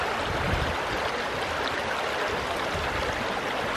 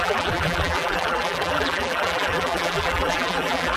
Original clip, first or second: first